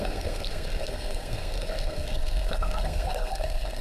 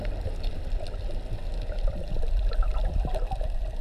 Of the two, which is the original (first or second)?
second